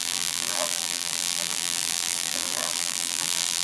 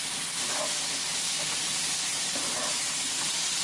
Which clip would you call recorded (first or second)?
second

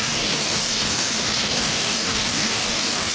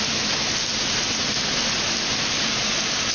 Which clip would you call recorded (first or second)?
second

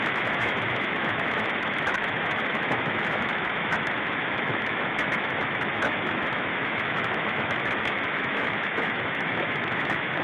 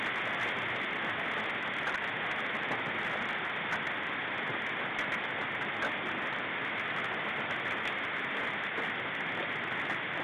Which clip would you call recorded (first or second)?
second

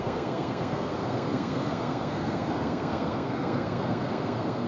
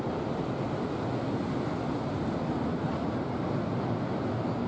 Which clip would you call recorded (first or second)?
second